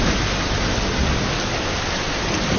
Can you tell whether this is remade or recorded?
recorded